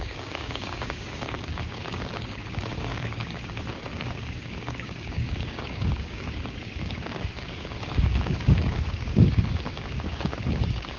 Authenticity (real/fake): fake